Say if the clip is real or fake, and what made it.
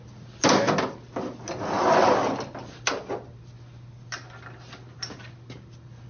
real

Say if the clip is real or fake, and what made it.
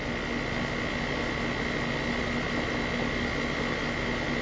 real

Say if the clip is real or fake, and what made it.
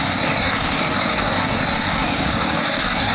fake, codec, DAC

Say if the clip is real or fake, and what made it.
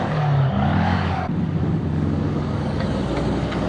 fake, codec, DAC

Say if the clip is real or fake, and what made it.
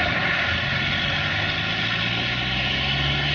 real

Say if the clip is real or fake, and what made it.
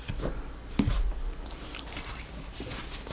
real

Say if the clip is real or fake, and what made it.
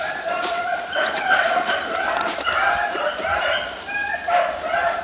real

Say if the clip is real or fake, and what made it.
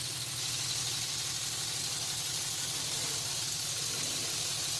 real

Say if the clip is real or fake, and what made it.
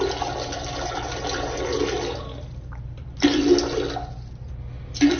real